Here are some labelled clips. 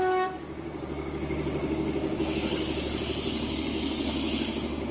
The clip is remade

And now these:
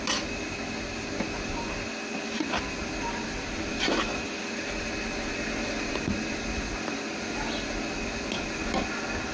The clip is recorded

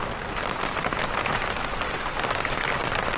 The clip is recorded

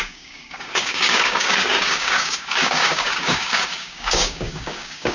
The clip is remade